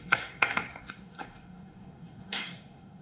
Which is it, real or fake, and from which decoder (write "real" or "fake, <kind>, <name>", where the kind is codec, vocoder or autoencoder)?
fake, codec, SNAC